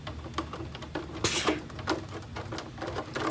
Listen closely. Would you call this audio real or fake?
real